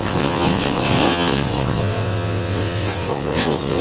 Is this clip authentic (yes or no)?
no